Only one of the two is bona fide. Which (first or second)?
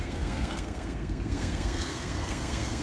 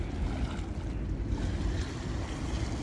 second